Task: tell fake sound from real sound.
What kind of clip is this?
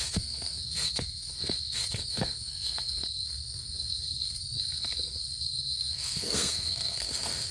fake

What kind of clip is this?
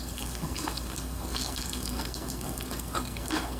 fake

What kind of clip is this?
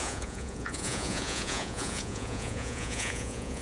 fake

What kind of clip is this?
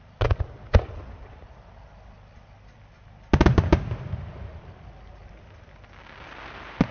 real